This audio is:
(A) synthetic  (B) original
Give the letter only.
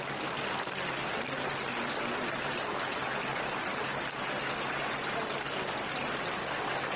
B